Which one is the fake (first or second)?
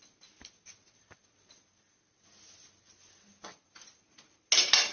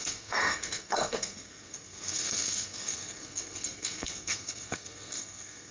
second